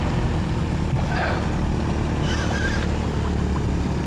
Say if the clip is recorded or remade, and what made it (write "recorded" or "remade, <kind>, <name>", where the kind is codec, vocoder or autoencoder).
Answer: recorded